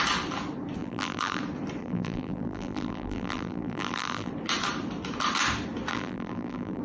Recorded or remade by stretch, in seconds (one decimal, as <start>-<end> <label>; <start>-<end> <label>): 0.0-0.8 recorded; 0.8-1.4 remade; 1.4-1.8 recorded; 1.8-4.3 remade; 4.3-5.9 recorded; 5.9-6.8 remade